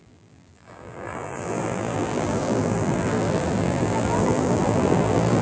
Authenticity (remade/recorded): remade